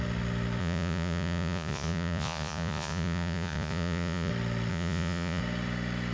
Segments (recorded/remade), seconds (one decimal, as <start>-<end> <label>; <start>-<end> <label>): 0.0-0.6 recorded; 0.6-4.3 remade; 4.3-4.7 recorded; 4.7-5.4 remade; 5.4-6.1 recorded